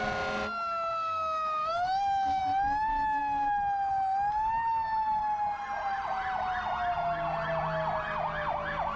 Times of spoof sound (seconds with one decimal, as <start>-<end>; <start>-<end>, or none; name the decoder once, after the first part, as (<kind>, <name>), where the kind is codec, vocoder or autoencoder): 0.9-2.4 (autoencoder, DAC-VAE)